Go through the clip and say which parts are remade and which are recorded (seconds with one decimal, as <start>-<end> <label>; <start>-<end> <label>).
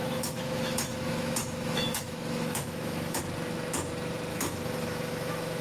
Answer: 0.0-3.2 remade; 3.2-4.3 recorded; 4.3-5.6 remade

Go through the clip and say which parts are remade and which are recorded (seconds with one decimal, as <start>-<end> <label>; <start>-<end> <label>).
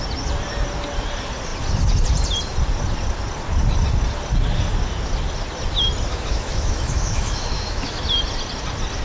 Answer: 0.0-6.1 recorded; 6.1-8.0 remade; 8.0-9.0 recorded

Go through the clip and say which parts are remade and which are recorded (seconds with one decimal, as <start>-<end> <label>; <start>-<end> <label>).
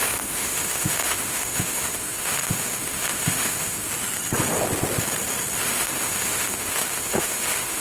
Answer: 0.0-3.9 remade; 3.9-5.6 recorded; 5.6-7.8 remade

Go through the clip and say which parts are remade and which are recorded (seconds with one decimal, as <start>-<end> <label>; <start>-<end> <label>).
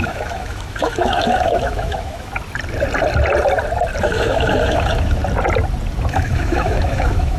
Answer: 0.0-2.3 remade; 2.3-4.0 recorded; 4.0-5.2 remade; 5.2-6.1 recorded; 6.1-7.4 remade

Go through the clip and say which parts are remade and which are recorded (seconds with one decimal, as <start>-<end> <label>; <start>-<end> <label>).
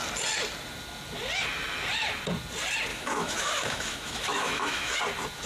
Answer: 0.0-2.9 recorded; 2.9-5.0 remade; 5.0-5.5 recorded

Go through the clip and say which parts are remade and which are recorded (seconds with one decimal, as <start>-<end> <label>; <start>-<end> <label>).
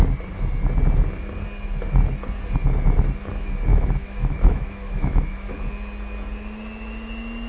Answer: 0.0-3.7 recorded; 3.7-5.5 remade; 5.5-7.5 recorded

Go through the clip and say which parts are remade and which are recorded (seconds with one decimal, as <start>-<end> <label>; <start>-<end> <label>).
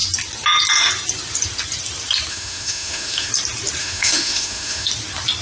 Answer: 0.0-2.3 recorded; 2.3-3.3 remade; 3.3-3.8 recorded; 3.8-4.9 remade; 4.9-5.4 recorded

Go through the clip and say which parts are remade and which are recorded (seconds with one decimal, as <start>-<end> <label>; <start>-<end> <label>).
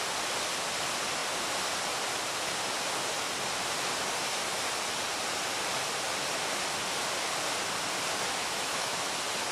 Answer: 0.0-8.4 recorded; 8.4-9.1 remade; 9.1-9.5 recorded